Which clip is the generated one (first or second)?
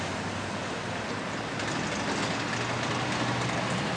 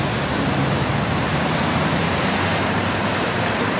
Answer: second